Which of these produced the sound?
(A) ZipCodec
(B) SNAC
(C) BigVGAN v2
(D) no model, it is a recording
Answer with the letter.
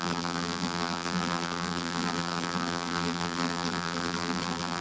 C